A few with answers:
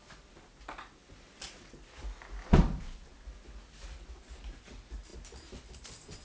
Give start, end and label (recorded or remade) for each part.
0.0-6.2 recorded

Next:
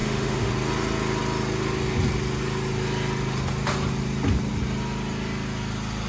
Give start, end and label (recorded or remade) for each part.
0.0-0.5 remade; 0.5-6.1 recorded

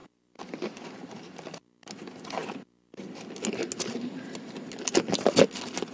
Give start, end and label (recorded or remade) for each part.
0.0-1.6 remade; 1.6-5.9 recorded

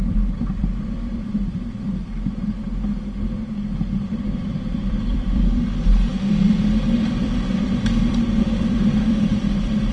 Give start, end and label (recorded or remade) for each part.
0.0-2.0 remade; 2.0-4.1 recorded; 4.1-9.9 remade

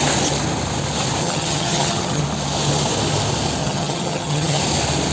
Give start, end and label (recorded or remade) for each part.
0.0-1.2 recorded; 1.2-2.2 remade; 2.2-3.6 recorded; 3.6-4.6 remade; 4.6-5.1 recorded